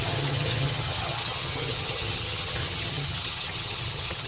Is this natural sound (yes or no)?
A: no